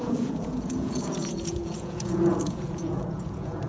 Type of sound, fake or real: fake